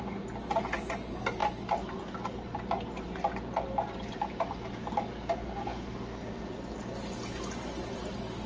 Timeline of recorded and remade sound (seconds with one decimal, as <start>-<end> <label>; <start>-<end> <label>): 0.0-8.5 recorded